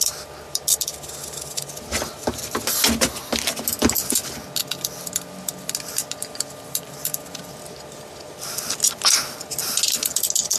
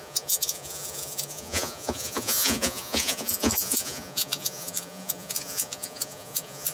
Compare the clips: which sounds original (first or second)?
first